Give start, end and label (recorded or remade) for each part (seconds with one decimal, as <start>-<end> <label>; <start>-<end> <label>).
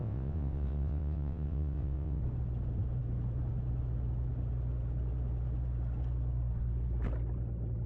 0.0-2.2 remade; 2.2-7.9 recorded